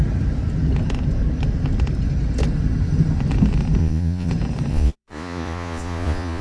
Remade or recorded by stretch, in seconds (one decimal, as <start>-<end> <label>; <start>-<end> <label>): 0.0-3.8 recorded; 3.8-4.3 remade; 4.3-4.7 recorded; 4.7-6.4 remade